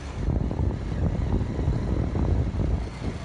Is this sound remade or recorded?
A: recorded